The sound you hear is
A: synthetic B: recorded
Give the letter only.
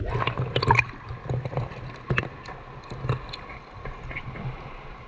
B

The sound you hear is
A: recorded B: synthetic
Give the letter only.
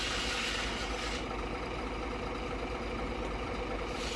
A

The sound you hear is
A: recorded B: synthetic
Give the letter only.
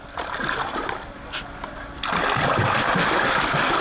A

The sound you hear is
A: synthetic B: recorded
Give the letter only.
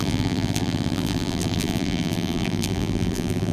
A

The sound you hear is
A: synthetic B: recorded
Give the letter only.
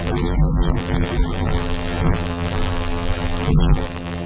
A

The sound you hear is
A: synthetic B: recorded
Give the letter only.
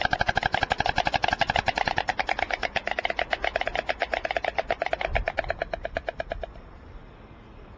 B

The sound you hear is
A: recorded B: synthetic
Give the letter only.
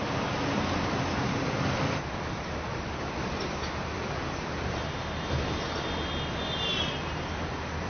B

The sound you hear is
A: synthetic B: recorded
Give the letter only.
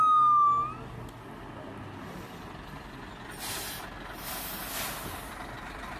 B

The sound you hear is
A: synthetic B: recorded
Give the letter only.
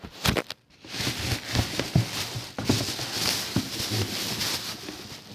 B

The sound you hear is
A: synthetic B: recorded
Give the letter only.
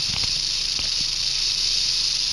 B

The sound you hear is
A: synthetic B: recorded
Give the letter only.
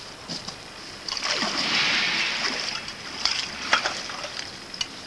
A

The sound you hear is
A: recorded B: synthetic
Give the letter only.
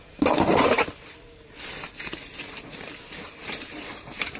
B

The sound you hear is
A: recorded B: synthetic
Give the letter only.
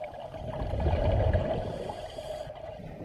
B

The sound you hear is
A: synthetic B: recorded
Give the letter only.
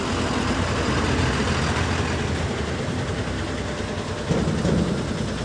B